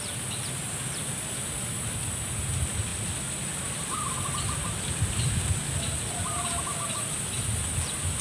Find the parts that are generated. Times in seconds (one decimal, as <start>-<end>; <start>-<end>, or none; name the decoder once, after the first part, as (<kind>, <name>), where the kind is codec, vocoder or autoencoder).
2.9-6.1 (vocoder, BigVGAN v2)